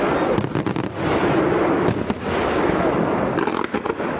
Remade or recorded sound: recorded